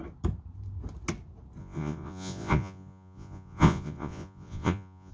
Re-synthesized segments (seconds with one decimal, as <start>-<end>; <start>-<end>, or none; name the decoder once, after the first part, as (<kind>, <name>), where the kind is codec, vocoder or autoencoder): 1.6-5.1 (vocoder, Vocos)